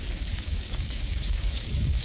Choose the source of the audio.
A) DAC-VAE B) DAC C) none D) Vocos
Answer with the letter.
B